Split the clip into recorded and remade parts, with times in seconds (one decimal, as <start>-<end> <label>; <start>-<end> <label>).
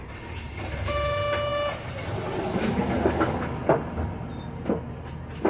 0.0-5.5 recorded